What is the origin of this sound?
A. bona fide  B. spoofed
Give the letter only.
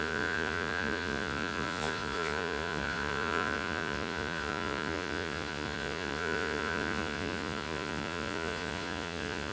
B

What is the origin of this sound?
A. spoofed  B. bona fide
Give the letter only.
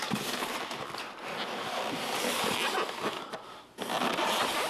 B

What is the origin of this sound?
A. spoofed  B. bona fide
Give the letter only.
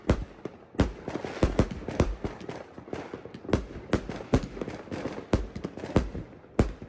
B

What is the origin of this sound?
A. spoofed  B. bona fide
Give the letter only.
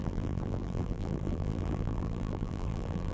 A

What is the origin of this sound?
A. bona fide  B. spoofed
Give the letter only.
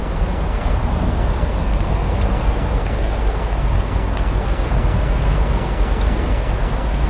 B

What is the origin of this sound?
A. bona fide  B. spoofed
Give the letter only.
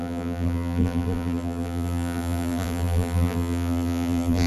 B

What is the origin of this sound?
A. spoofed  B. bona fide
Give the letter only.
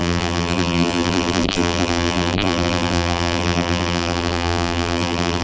A